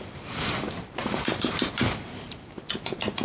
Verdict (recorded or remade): remade